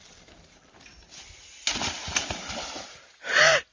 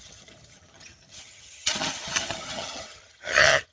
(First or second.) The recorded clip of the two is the first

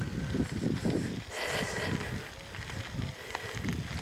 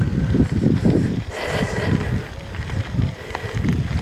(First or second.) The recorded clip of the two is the first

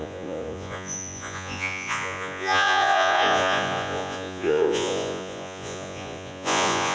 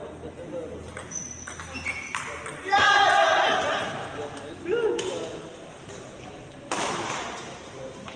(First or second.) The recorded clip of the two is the second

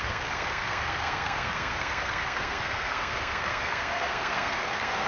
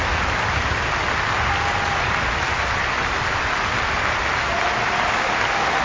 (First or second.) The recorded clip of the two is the second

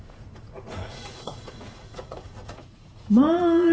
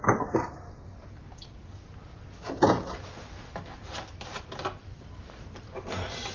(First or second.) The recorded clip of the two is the second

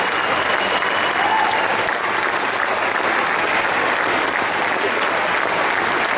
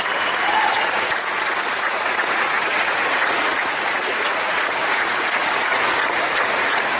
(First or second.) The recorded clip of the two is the first